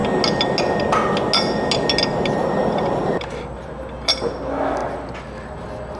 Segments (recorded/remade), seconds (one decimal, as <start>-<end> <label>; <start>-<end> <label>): 0.0-2.4 recorded; 2.4-3.2 remade; 3.2-6.0 recorded